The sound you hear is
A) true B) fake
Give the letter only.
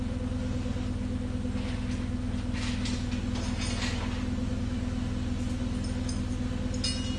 A